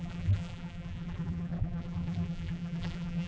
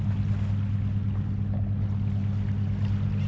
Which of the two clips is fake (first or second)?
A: first